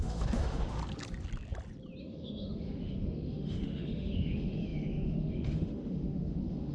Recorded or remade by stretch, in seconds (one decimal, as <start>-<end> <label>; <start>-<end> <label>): 0.0-0.8 remade; 0.8-2.0 recorded; 2.0-6.7 remade